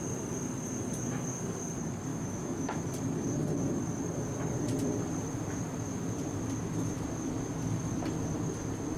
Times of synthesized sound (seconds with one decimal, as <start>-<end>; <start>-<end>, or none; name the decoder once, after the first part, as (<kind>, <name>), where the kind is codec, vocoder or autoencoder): 2.1-2.8 (autoencoder, DAC-VAE)